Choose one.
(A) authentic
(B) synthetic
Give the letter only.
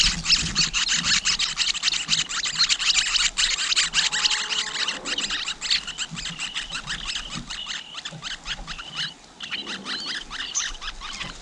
A